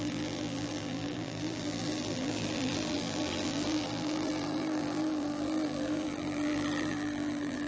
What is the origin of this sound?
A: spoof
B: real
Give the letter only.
A